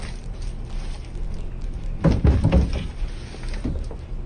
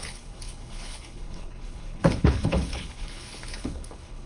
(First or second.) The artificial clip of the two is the second